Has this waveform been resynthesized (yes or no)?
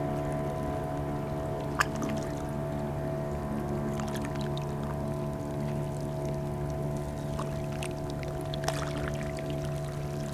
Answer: no